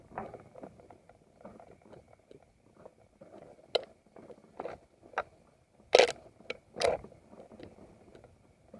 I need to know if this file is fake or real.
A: real